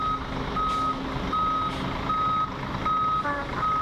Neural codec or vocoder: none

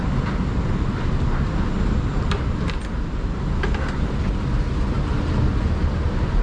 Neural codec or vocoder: none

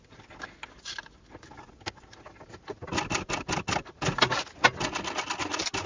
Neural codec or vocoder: none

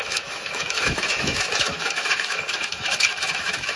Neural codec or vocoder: autoencoder, DAC-VAE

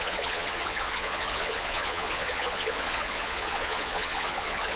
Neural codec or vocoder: vocoder, Vocos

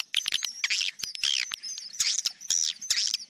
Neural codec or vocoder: none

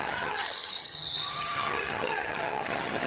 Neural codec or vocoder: vocoder, HiFi-GAN